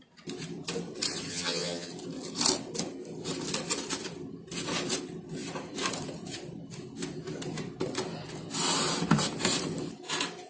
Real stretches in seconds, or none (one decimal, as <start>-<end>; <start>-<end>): 0.0-1.3; 1.9-10.5